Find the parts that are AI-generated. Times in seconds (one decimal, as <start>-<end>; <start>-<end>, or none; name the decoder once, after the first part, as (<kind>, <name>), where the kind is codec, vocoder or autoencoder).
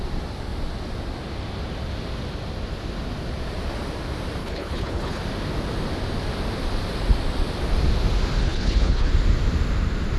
4.4-5.2 (codec, HILCodec); 8.4-9.1